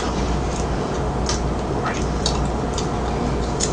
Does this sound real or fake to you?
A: real